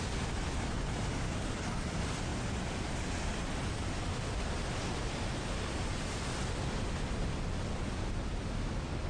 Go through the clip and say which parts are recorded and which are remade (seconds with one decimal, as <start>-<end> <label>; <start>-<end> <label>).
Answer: 0.0-9.1 recorded

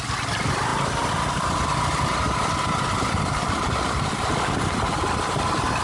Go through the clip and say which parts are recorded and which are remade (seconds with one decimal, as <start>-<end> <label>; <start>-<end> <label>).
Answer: 0.0-5.8 recorded

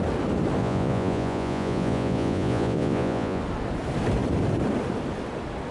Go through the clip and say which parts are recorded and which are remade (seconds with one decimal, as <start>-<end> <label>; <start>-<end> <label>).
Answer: 0.0-0.6 recorded; 0.6-3.4 remade; 3.4-5.7 recorded